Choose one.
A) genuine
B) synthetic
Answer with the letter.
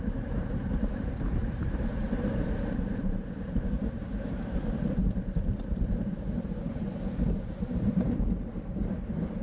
B